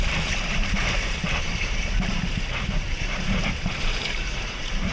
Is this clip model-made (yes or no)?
yes